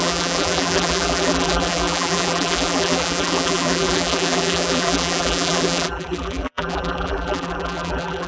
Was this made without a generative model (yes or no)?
no